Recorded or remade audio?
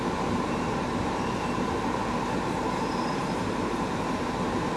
remade